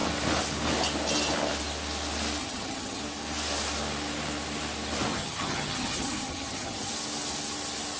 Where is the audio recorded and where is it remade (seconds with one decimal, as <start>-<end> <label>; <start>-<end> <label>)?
0.0-2.4 recorded; 2.4-3.0 remade; 3.0-5.1 recorded; 5.1-6.9 remade; 6.9-8.0 recorded